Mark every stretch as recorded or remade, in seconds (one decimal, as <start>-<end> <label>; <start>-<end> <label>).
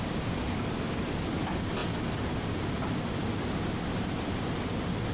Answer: 0.0-5.1 recorded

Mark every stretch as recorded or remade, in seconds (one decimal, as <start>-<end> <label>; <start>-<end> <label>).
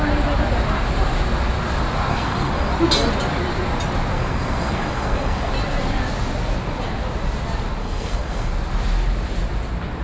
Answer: 0.0-2.1 recorded; 2.1-2.7 remade; 2.7-4.1 recorded; 4.1-5.5 remade; 5.5-7.8 recorded; 7.8-8.5 remade; 8.5-10.0 recorded